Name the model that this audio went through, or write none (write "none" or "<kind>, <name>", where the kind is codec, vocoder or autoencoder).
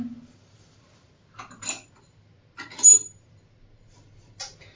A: none